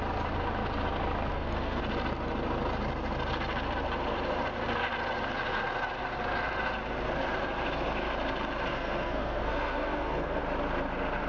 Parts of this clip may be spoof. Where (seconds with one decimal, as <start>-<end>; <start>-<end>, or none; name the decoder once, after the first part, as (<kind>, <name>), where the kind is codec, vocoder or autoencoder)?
1.3-1.8 (codec, SNAC); 8.7-10.4